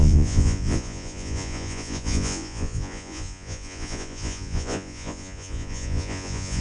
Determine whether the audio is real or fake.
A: fake